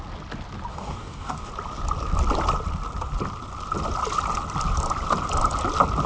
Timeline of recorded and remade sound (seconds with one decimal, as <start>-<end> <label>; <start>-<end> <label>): 0.0-0.7 recorded; 0.7-1.5 remade; 1.5-6.1 recorded